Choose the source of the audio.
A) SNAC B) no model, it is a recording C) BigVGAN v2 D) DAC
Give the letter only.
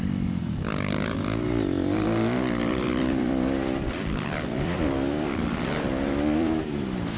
C